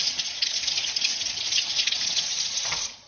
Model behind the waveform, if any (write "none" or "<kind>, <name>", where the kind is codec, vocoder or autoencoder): vocoder, Vocos